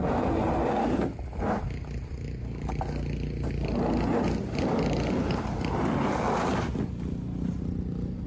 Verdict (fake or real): real